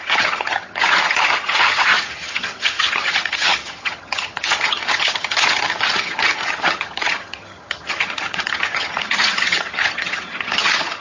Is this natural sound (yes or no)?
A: no